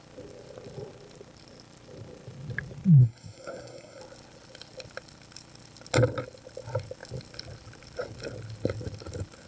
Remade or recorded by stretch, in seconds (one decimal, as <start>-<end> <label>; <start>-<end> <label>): 0.0-3.0 recorded; 3.0-4.0 remade; 4.0-9.5 recorded